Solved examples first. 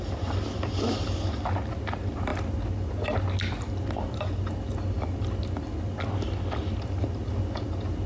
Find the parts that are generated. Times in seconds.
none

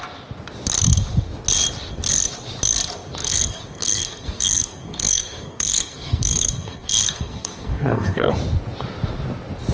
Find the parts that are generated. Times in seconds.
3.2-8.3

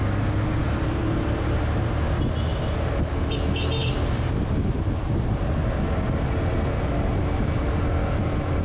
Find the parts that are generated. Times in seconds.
0.6-1.6; 3.8-4.9

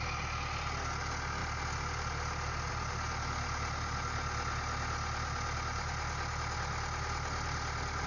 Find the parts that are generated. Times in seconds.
none

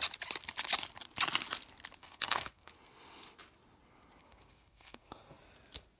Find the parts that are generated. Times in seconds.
2.0-2.7; 4.2-5.4

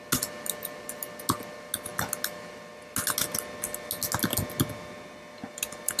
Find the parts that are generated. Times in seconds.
none

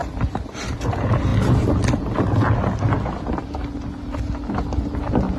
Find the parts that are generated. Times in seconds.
0.0-0.6

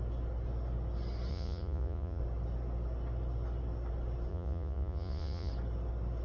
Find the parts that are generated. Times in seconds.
1.3-2.2; 4.3-5.5